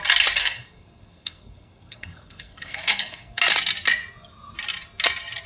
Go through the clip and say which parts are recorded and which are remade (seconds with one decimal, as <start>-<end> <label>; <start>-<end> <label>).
0.0-0.4 recorded; 0.4-3.4 remade; 3.4-5.5 recorded